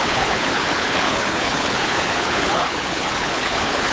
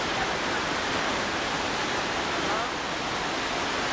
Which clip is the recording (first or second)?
second